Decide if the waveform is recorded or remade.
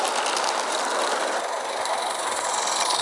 recorded